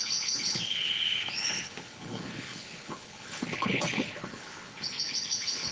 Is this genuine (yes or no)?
no